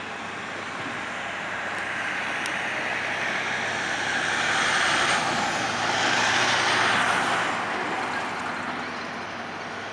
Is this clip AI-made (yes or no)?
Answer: no